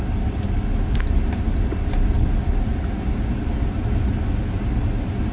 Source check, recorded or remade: recorded